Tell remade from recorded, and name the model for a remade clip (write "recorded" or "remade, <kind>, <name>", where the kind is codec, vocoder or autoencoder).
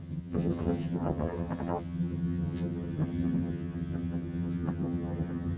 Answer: remade, vocoder, HiFi-GAN